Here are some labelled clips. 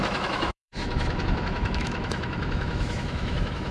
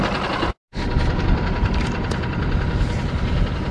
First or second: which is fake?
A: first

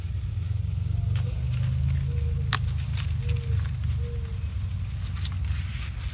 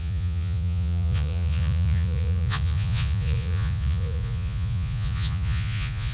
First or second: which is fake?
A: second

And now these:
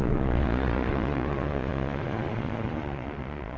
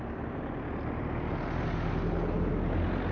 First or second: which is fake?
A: first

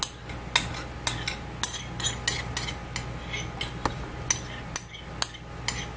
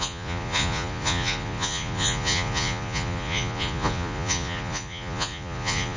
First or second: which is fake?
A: second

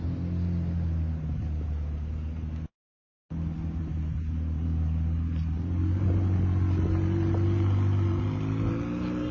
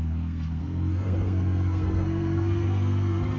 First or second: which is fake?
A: second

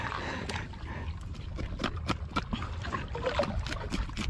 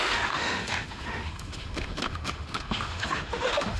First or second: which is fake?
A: second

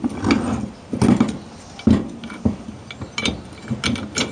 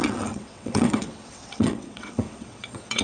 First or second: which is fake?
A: second